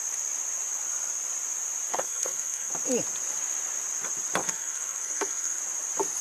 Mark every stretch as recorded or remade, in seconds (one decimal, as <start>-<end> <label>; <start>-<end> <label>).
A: 0.0-1.9 recorded; 1.9-2.7 remade; 2.7-4.4 recorded; 4.4-5.6 remade; 5.6-6.2 recorded